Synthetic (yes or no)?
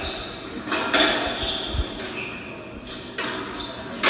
no